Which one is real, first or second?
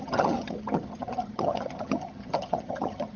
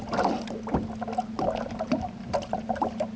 second